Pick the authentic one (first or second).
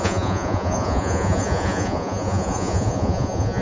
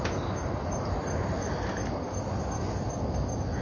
second